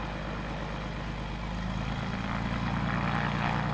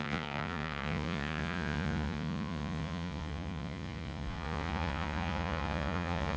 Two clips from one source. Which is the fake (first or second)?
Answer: second